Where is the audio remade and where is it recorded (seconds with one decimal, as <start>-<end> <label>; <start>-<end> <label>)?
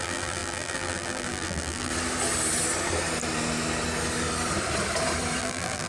0.0-1.9 remade; 1.9-5.4 recorded; 5.4-5.9 remade